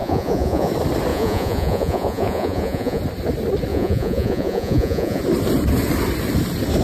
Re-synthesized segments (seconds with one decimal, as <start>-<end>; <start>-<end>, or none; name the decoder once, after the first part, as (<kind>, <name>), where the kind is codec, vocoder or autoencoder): 0.0-0.7 (vocoder, Vocos); 1.1-3.0; 3.7-5.2